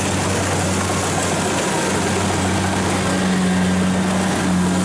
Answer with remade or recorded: recorded